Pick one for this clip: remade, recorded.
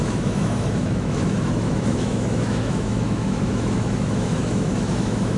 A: remade